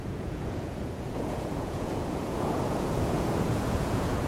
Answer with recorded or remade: remade